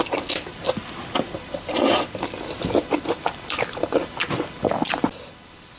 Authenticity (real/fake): real